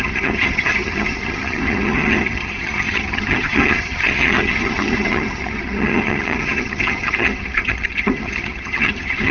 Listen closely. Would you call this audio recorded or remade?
remade